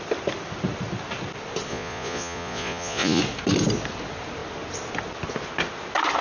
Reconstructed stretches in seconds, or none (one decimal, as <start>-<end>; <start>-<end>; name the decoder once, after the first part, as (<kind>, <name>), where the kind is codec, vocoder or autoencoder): 1.7-3.2 (vocoder, Vocos)